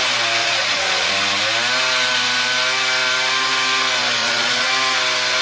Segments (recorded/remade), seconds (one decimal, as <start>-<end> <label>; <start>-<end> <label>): 0.0-0.4 recorded; 0.4-1.1 remade; 1.1-4.2 recorded; 4.2-4.7 remade; 4.7-5.4 recorded